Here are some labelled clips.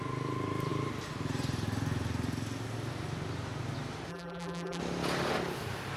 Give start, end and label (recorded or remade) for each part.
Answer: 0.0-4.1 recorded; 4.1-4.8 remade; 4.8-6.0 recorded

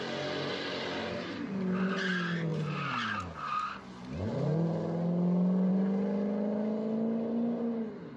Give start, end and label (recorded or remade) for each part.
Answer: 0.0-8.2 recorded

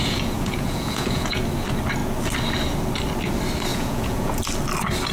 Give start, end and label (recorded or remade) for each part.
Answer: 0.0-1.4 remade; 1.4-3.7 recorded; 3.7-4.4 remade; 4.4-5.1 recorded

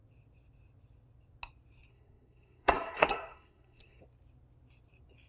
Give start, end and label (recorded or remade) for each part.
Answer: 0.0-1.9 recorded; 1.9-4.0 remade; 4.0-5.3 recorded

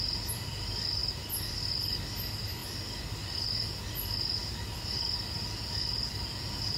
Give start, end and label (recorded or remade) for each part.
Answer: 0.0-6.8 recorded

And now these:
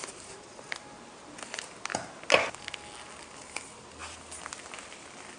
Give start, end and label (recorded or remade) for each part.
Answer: 0.0-5.4 recorded

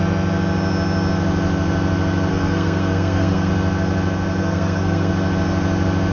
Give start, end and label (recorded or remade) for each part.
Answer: 0.0-2.3 recorded; 2.3-3.5 remade; 3.5-4.4 recorded; 4.4-5.1 remade; 5.1-6.1 recorded

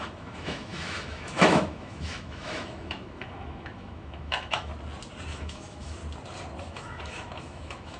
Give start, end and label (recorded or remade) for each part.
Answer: 0.0-4.7 remade; 4.7-5.3 recorded; 5.3-6.0 remade; 6.0-6.6 recorded; 6.6-8.0 remade